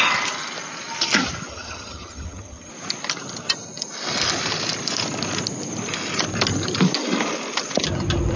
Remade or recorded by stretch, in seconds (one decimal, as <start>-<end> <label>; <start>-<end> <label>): 0.0-1.5 recorded; 1.5-2.7 remade; 2.7-8.4 recorded